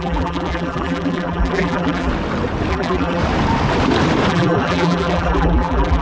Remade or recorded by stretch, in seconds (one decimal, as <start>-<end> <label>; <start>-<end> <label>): 0.0-2.1 remade; 2.1-2.7 recorded; 2.7-3.2 remade; 3.2-4.3 recorded; 4.3-6.0 remade